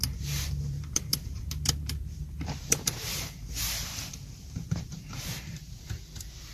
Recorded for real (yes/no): no